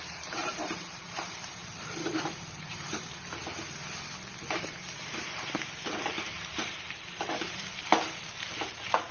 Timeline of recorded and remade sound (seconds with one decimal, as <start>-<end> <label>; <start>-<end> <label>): 0.0-3.4 remade; 3.4-4.6 recorded; 4.6-9.1 remade

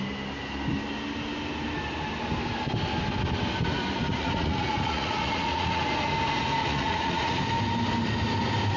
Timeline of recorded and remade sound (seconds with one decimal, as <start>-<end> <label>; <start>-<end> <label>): 0.0-4.1 recorded; 4.1-5.8 remade; 5.8-6.6 recorded; 6.6-7.4 remade; 7.4-8.8 recorded

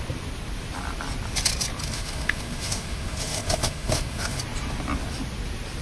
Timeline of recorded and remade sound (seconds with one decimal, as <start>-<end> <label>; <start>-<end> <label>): 0.0-1.8 recorded; 1.8-4.4 remade; 4.4-5.8 recorded

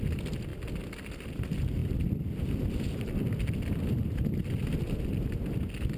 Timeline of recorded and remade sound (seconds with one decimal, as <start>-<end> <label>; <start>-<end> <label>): 0.0-6.0 recorded

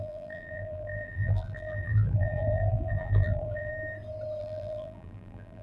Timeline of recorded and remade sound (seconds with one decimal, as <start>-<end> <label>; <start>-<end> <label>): 0.0-3.7 remade; 3.7-4.4 recorded; 4.4-5.6 remade

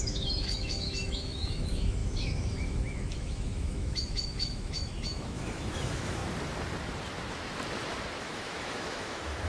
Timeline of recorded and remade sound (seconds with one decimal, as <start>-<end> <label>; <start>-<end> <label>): 0.0-6.2 remade; 6.2-8.2 recorded; 8.2-9.5 remade

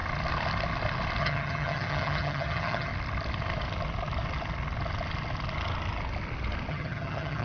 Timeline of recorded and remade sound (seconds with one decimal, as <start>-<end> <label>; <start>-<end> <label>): 0.0-1.2 recorded; 1.2-2.9 remade; 2.9-6.7 recorded; 6.7-7.4 remade